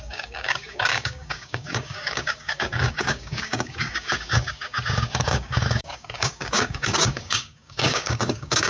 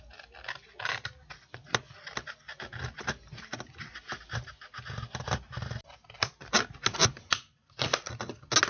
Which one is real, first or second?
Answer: second